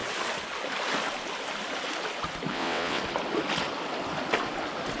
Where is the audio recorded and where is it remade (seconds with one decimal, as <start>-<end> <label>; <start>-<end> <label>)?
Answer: 0.0-2.5 recorded; 2.5-3.0 remade; 3.0-5.0 recorded